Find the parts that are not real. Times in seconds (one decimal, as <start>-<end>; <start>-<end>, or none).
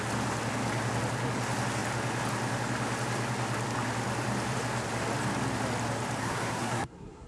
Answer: 6.2-7.3